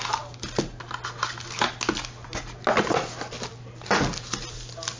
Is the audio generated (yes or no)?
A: no